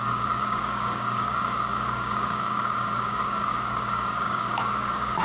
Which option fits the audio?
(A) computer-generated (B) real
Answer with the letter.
A